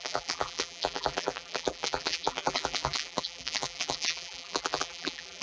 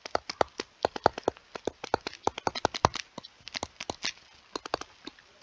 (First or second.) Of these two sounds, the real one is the second